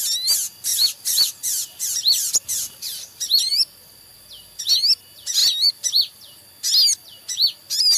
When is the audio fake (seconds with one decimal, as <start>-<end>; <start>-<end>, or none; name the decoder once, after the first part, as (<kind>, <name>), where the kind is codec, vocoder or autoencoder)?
0.7-4.6 (vocoder, BigVGAN v2); 5.4-6.4